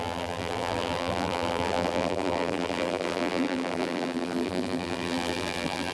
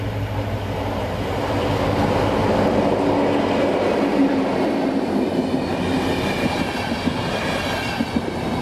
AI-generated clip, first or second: first